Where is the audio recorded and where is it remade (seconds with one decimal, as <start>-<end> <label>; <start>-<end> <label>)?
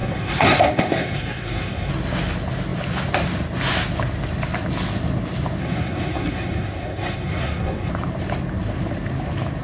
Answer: 0.0-1.9 remade; 1.9-5.6 recorded; 5.6-7.9 remade; 7.9-9.6 recorded